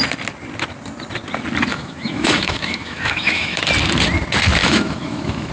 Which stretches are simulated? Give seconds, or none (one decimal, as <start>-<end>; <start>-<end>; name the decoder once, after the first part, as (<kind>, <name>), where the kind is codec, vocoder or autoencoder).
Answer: 1.7-3.6 (autoencoder, DAC-VAE); 4.6-5.5